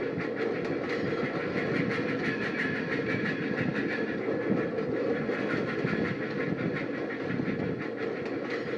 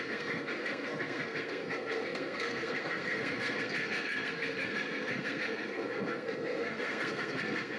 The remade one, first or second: second